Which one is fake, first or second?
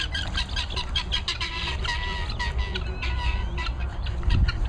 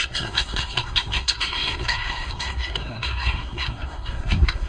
second